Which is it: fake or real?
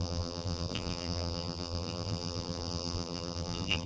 fake